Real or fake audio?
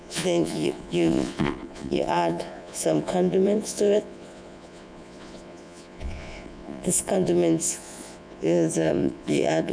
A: fake